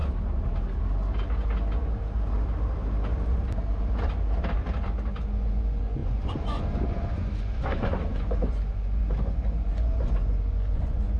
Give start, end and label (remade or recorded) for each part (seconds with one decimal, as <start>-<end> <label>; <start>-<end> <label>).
0.0-5.3 recorded; 5.3-11.2 remade